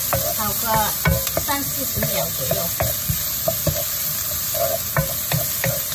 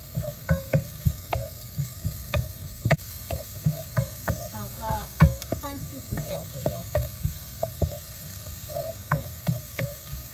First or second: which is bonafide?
first